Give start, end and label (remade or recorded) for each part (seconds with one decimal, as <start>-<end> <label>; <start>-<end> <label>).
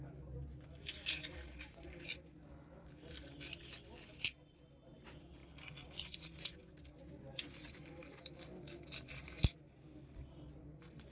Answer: 0.0-11.1 recorded